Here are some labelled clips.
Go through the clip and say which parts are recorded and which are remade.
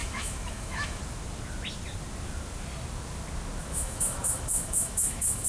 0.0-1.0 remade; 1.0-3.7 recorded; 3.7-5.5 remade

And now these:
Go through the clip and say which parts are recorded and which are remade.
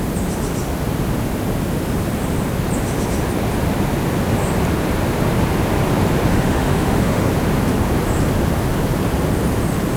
0.0-6.3 recorded; 6.3-7.3 remade; 7.3-10.0 recorded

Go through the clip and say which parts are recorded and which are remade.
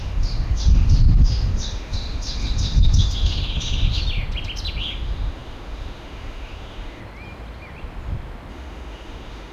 0.0-4.0 remade; 4.0-4.8 recorded; 4.8-7.0 remade; 7.0-8.5 recorded; 8.5-9.5 remade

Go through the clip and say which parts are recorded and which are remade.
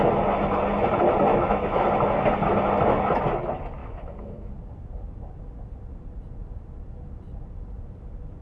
0.0-1.3 recorded; 1.3-1.9 remade; 1.9-3.8 recorded; 3.8-4.5 remade; 4.5-8.4 recorded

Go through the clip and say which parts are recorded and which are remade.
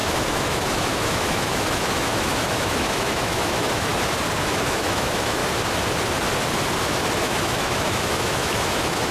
0.0-3.9 remade; 3.9-4.4 recorded; 4.4-5.4 remade; 5.4-7.2 recorded; 7.2-9.1 remade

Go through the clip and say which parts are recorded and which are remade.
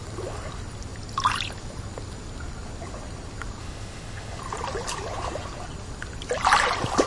0.0-3.6 recorded; 3.6-4.4 remade; 4.4-7.1 recorded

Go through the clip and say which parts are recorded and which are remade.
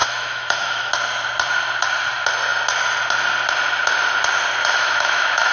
0.0-0.9 remade; 0.9-4.6 recorded; 4.6-5.5 remade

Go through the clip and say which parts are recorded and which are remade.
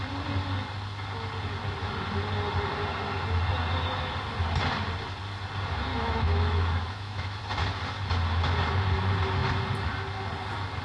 0.0-5.9 recorded; 5.9-7.4 remade; 7.4-10.8 recorded